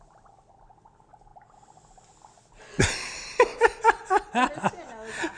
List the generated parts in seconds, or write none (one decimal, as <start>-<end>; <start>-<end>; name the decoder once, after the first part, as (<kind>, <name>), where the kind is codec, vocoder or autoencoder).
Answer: none